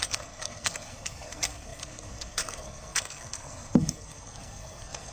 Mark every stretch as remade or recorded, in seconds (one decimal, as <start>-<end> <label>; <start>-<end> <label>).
0.0-5.1 remade